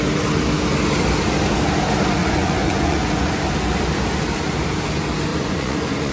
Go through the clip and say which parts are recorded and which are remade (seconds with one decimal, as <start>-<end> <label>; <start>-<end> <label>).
0.0-2.2 recorded; 2.2-3.4 remade; 3.4-5.3 recorded; 5.3-6.1 remade